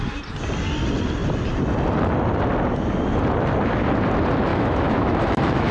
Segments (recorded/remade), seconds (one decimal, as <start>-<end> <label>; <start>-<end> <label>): 0.0-4.5 recorded; 4.5-5.7 remade